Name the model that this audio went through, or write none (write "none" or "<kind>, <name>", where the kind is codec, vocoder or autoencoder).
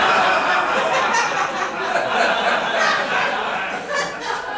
none